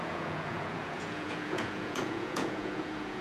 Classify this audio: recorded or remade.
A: remade